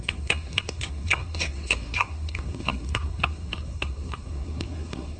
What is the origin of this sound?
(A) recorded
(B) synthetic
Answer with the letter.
B